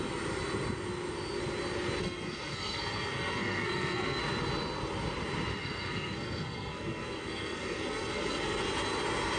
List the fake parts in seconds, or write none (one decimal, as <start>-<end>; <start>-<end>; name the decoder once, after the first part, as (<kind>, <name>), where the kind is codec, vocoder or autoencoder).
2.0-4.2 (codec, SNAC); 5.6-8.6